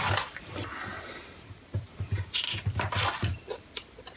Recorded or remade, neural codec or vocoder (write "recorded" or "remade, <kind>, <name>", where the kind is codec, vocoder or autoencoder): recorded